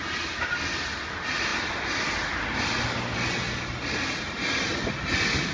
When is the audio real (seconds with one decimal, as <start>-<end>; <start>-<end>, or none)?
0.0-5.5